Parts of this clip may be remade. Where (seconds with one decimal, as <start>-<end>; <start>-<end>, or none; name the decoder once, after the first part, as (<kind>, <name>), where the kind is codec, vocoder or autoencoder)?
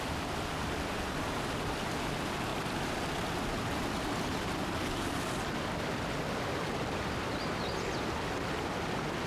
none